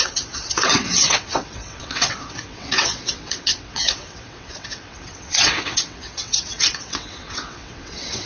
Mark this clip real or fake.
fake